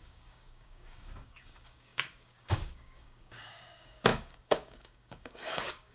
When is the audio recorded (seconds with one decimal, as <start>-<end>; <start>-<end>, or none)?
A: none